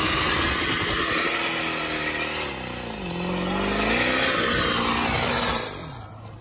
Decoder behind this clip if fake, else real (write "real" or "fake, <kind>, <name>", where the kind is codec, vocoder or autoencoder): real